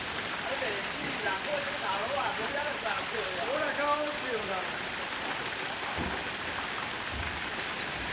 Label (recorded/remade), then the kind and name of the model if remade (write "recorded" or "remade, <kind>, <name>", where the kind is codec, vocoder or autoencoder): remade, vocoder, BigVGAN v2